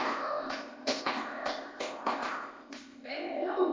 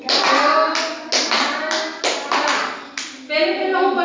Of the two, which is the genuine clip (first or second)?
second